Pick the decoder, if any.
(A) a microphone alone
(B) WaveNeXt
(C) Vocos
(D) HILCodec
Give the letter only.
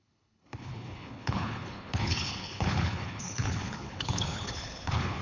D